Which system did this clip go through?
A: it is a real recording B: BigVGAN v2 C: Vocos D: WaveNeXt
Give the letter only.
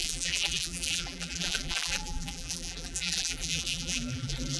B